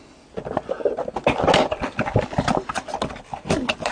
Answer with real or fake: real